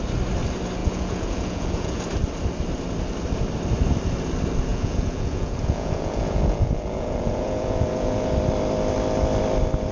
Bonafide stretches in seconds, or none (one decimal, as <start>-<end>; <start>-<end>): 0.0-0.8; 2.0-4.7; 8.3-9.9